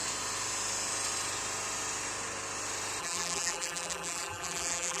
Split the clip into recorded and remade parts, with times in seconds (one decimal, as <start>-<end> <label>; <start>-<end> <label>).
0.0-3.0 recorded; 3.0-5.0 remade